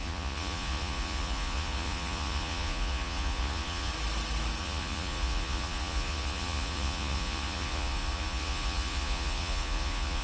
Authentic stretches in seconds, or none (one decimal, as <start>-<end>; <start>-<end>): 3.9-4.6